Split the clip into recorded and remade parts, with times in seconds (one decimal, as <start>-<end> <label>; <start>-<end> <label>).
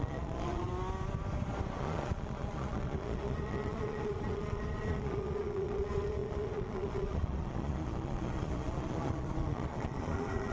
0.0-0.7 remade; 0.7-1.8 recorded; 1.8-10.5 remade